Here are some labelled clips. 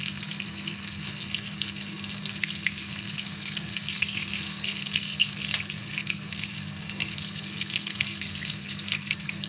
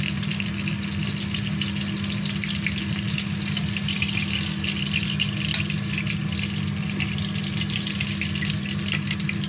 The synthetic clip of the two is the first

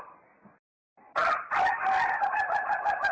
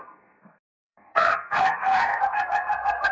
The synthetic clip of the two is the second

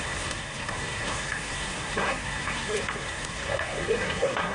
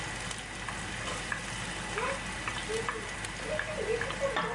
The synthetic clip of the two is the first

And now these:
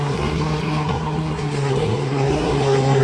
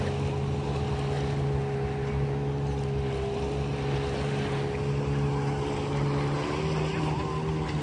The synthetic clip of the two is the first